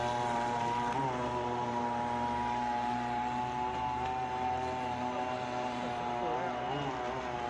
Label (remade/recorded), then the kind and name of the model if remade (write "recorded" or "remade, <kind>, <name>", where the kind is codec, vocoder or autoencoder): recorded